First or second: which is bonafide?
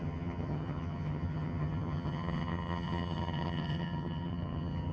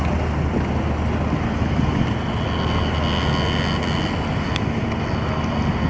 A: second